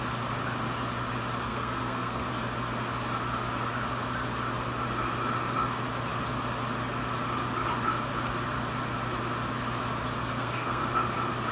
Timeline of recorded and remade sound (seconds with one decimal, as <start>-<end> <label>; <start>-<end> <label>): 0.0-1.5 recorded; 1.5-2.2 remade; 2.2-10.2 recorded; 10.2-10.8 remade; 10.8-11.5 recorded

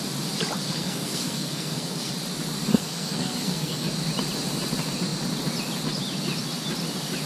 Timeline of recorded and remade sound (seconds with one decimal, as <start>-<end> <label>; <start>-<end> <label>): 0.0-0.6 recorded; 0.6-2.1 remade; 2.1-2.7 recorded; 2.7-3.9 remade; 3.9-7.3 recorded

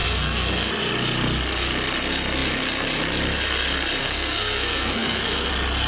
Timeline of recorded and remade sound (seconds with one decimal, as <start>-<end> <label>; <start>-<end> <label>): 0.0-0.7 remade; 0.7-4.0 recorded; 4.0-5.5 remade; 5.5-5.9 recorded

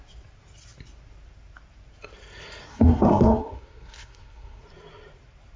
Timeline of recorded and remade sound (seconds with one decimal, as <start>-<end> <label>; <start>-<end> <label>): 0.0-2.7 recorded; 2.7-4.6 remade; 4.6-5.6 recorded

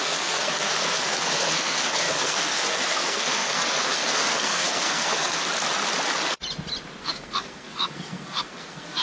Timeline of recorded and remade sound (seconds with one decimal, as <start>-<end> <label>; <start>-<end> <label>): 0.0-5.4 remade; 5.4-7.0 recorded; 7.0-9.0 remade

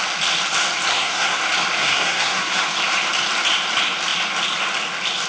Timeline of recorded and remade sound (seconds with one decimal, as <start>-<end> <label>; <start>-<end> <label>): 0.0-0.9 recorded; 0.9-1.4 remade; 1.4-1.8 recorded; 1.8-2.6 remade; 2.6-5.3 recorded

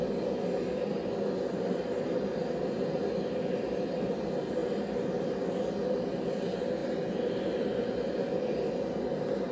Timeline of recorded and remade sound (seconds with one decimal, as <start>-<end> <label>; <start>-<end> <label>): 0.0-9.5 recorded